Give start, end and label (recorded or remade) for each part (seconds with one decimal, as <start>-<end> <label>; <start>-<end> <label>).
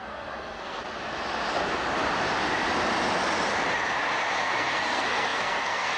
0.0-0.8 remade; 0.8-4.4 recorded; 4.4-6.0 remade